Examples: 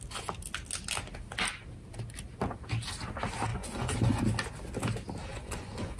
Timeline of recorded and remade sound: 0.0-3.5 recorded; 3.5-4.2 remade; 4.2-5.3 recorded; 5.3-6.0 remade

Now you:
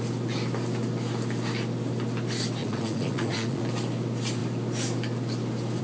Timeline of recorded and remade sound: 0.0-2.6 recorded; 2.6-3.6 remade; 3.6-5.8 recorded

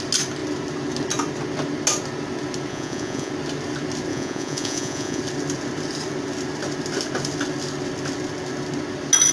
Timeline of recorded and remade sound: 0.0-2.7 recorded; 2.7-3.3 remade; 3.3-4.1 recorded; 4.1-5.2 remade; 5.2-9.3 recorded

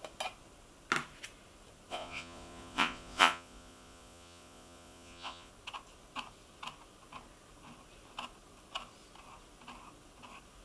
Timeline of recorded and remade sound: 0.0-1.9 recorded; 1.9-5.5 remade; 5.5-10.6 recorded

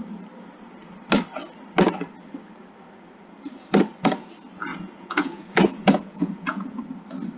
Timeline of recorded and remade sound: 0.0-4.7 recorded; 4.7-6.8 remade; 6.8-7.4 recorded

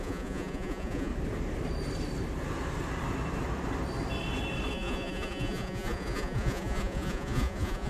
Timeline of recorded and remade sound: 0.0-1.1 remade; 1.1-4.7 recorded; 4.7-7.9 remade

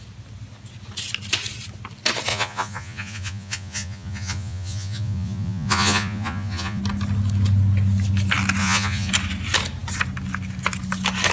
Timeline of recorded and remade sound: 0.0-2.3 recorded; 2.3-6.8 remade; 6.8-8.6 recorded; 8.6-9.1 remade; 9.1-11.3 recorded

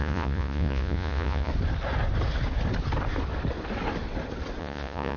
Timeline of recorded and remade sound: 0.0-1.5 remade; 1.5-4.6 recorded; 4.6-5.2 remade